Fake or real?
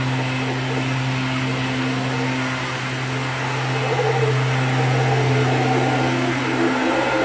real